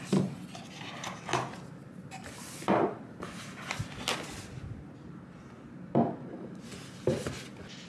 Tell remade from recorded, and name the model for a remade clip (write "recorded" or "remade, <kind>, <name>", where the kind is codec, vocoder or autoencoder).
recorded